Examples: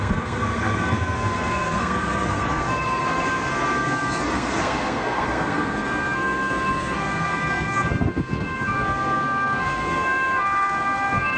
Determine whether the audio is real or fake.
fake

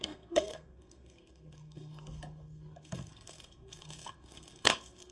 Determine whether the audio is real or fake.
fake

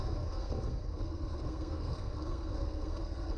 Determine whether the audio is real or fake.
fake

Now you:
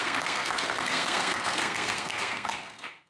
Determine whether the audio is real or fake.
fake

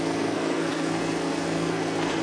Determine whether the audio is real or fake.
fake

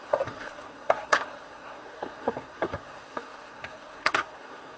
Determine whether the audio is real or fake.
fake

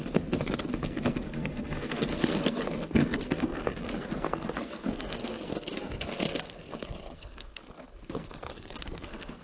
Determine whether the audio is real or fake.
fake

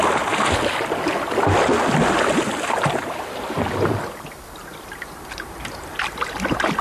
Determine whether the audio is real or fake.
real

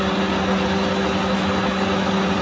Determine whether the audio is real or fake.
real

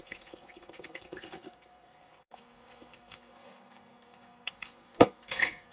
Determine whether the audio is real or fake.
fake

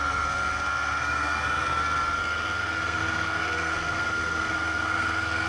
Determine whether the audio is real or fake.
fake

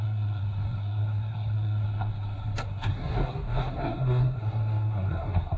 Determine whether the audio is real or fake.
fake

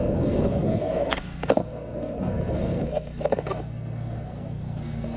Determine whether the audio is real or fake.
fake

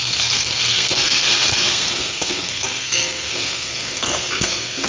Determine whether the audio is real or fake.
fake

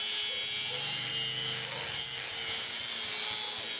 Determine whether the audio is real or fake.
real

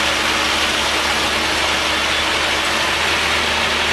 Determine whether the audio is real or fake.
real